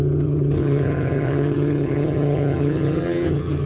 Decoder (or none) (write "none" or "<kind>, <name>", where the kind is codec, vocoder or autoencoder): vocoder, HiFi-GAN